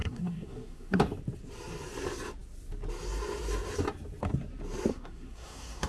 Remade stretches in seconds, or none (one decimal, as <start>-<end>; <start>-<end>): 0.0-1.0; 4.9-5.9